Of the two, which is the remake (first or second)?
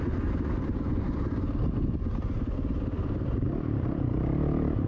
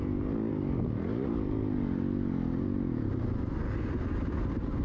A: first